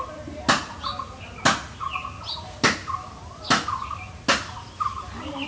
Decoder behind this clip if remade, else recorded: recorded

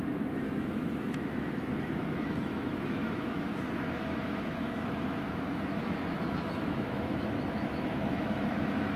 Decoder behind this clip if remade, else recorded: remade, autoencoder, DAC-VAE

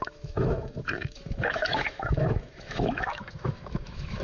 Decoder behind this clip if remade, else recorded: remade, autoencoder, DAC-VAE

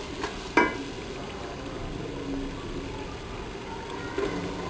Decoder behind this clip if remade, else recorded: recorded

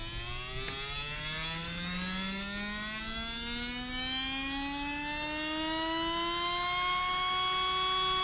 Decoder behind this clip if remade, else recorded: recorded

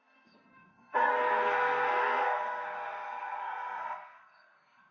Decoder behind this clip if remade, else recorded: remade, codec, SNAC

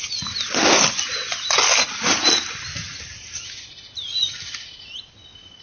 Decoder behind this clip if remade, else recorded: recorded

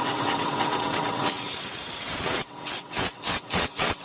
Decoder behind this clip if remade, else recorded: remade, vocoder, WaveNeXt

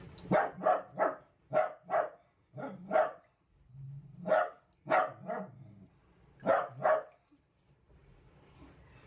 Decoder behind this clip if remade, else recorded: recorded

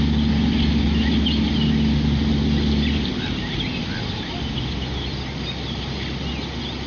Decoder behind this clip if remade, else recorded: recorded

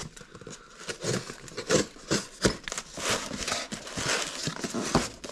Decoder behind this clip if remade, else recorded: recorded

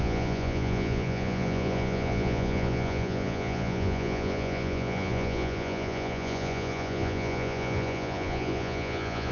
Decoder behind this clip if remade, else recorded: remade, vocoder, Vocos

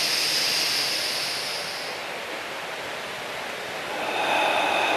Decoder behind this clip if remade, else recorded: recorded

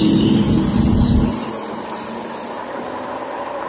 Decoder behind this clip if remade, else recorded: recorded